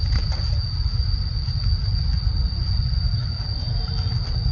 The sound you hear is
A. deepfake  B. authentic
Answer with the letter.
B